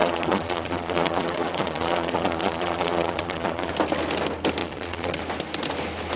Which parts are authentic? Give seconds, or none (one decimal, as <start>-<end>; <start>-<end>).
3.7-4.6; 5.2-6.2